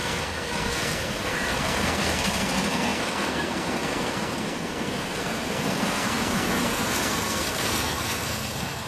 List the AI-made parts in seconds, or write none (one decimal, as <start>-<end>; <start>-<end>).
0.0-8.9

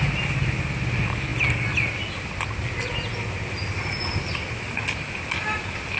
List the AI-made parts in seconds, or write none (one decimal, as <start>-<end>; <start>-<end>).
none

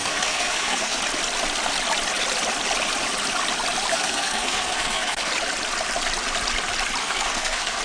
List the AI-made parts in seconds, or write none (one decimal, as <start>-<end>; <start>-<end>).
0.0-1.0; 3.9-5.3; 7.0-7.8

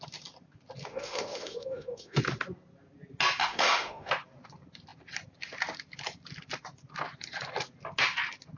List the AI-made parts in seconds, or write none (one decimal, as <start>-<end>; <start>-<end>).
0.9-2.2; 3.4-4.1

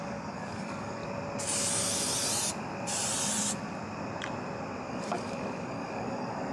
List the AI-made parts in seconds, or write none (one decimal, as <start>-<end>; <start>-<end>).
0.0-1.0; 4.9-6.5

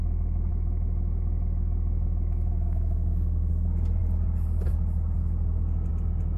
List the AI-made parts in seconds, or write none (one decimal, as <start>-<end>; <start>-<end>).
0.5-3.5

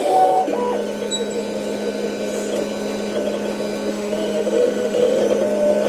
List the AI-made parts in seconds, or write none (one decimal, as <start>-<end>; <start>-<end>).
0.0-0.4; 3.9-5.2

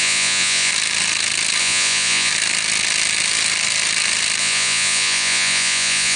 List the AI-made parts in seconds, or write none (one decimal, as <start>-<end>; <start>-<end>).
0.0-0.7; 1.6-2.3; 4.4-6.2